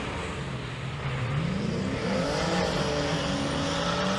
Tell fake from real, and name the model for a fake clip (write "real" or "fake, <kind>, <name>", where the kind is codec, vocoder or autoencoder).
real